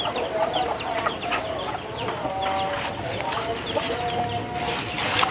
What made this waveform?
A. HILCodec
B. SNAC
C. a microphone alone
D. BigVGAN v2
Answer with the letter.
C